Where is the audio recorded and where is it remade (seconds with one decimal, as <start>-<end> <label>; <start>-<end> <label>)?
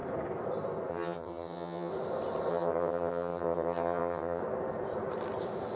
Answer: 0.0-0.9 recorded; 0.9-1.9 remade; 1.9-2.5 recorded; 2.5-4.4 remade; 4.4-5.8 recorded